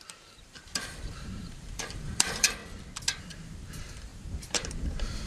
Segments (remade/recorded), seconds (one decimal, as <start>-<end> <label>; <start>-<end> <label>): 0.0-2.6 remade; 2.6-3.2 recorded; 3.2-5.3 remade